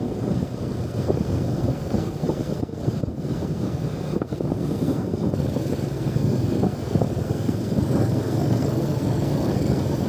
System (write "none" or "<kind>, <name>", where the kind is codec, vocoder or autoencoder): codec, SNAC